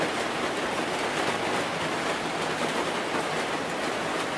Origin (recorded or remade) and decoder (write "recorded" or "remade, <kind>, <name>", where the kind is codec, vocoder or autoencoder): recorded